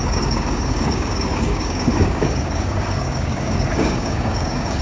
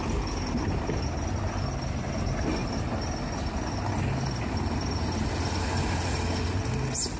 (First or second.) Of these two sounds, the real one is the second